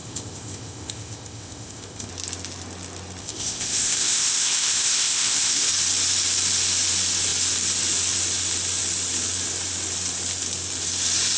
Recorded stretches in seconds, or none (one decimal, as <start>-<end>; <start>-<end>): 2.1-3.2; 5.7-11.4